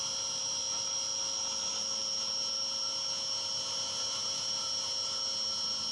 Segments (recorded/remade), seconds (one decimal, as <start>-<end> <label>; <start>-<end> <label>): 0.0-5.9 recorded